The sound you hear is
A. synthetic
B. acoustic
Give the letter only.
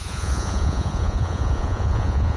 A